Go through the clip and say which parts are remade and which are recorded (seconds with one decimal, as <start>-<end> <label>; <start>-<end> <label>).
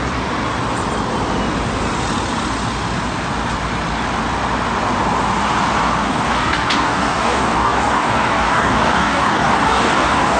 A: 0.0-6.0 recorded; 6.0-10.4 remade